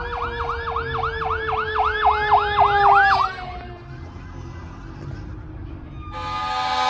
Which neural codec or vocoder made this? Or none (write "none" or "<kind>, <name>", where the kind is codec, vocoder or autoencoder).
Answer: none